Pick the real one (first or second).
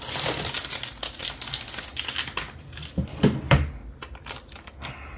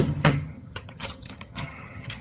first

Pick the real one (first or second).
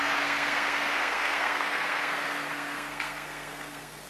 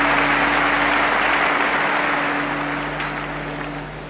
second